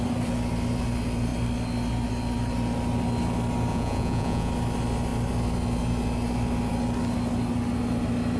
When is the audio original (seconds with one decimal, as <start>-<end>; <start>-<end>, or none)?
0.0-3.7; 4.5-8.4